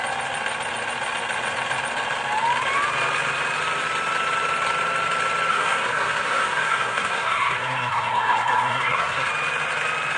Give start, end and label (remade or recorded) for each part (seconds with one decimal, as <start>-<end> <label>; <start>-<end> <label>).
0.0-5.5 recorded; 5.5-9.3 remade; 9.3-10.2 recorded